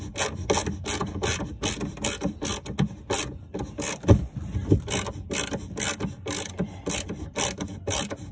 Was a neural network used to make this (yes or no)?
no